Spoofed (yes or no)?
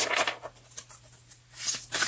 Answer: no